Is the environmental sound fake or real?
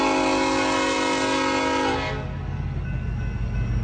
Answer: real